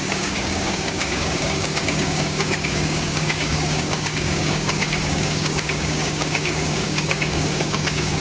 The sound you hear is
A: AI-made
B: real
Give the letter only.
A